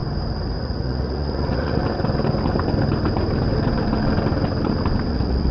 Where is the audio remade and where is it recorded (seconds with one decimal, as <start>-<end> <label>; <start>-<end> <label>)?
0.0-0.6 recorded; 0.6-1.8 remade; 1.8-5.1 recorded; 5.1-5.5 remade